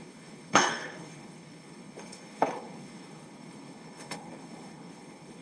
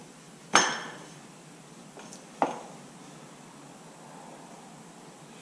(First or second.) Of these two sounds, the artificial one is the first